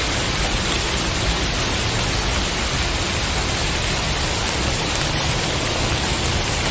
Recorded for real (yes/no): yes